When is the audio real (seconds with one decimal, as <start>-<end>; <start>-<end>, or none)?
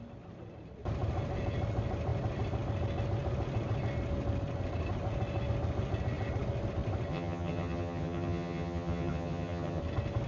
0.0-7.1; 9.8-10.3